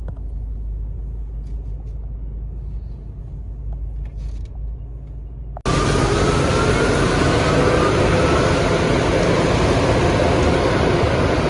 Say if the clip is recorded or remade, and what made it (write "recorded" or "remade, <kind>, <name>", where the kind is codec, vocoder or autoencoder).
recorded